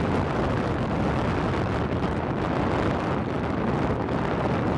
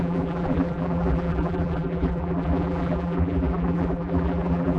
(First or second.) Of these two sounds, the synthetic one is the second